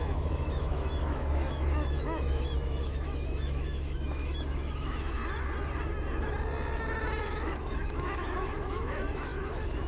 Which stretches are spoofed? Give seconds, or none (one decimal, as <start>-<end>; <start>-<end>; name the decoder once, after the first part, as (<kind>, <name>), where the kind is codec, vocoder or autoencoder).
0.0-5.2 (autoencoder, DAC-VAE); 7.2-9.9